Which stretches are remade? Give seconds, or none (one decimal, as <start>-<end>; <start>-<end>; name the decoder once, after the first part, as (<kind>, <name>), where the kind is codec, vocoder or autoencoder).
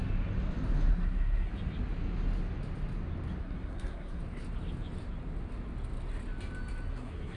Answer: 0.9-1.5 (codec, SNAC); 3.4-4.2; 6.9-7.4